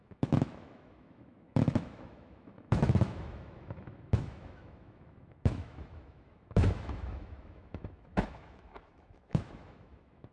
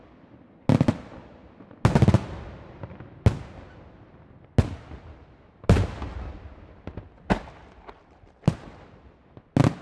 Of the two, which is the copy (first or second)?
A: first